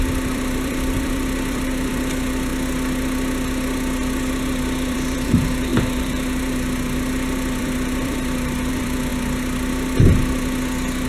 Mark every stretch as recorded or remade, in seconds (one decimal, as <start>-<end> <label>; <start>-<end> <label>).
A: 0.0-2.5 remade; 2.5-4.9 recorded; 4.9-9.1 remade; 9.1-11.1 recorded